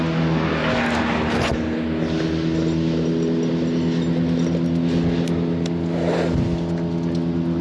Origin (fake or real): real